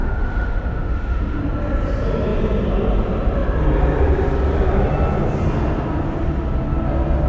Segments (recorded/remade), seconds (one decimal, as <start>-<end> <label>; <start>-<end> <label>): 0.0-1.4 remade; 1.4-7.3 recorded